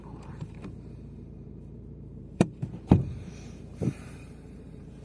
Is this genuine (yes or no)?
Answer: no